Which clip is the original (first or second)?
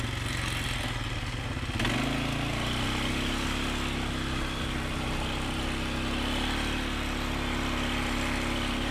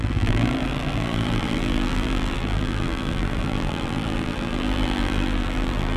first